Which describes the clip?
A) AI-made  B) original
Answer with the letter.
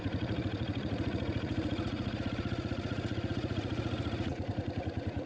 A